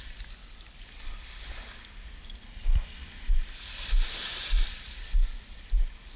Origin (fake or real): real